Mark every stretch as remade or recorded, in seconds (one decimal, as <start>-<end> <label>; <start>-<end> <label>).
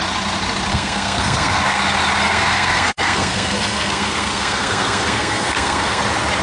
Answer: 0.0-0.7 recorded; 0.7-1.8 remade; 1.8-2.2 recorded; 2.2-6.0 remade; 6.0-6.4 recorded